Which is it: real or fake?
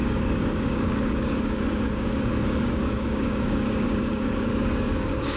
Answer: fake